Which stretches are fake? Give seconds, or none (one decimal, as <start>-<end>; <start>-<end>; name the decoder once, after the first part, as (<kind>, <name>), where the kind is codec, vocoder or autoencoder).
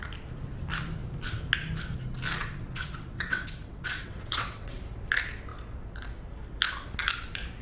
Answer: 2.4-4.8 (vocoder, WaveNeXt)